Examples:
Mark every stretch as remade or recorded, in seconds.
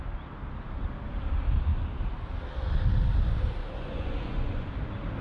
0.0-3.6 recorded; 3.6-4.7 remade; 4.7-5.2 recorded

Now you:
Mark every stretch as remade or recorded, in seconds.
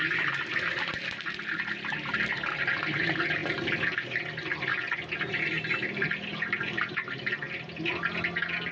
0.0-8.7 recorded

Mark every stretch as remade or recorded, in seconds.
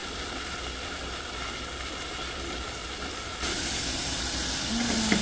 0.0-5.2 recorded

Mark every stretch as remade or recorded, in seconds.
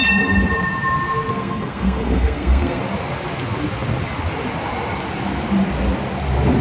0.0-1.3 recorded; 1.3-2.8 remade; 2.8-6.6 recorded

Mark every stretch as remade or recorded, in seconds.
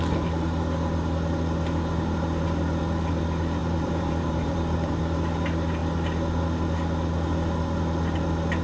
0.0-3.6 recorded; 3.6-5.0 remade; 5.0-8.6 recorded